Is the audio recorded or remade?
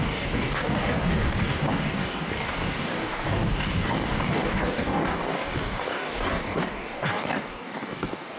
remade